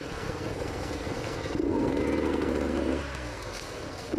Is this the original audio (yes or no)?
no